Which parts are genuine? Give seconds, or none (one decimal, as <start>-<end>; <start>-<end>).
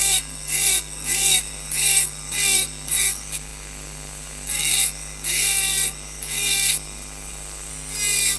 7.7-8.4